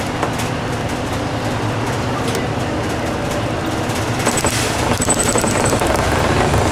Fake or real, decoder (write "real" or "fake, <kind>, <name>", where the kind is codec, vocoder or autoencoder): fake, vocoder, BigVGAN v2